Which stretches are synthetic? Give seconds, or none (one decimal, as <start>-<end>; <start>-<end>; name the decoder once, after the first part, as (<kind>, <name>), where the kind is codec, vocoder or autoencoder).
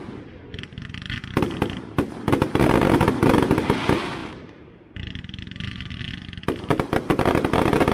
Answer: 4.2-6.0 (vocoder, BigVGAN v2)